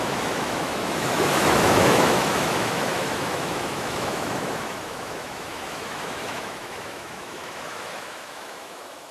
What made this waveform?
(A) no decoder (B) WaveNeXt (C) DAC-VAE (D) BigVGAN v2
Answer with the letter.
C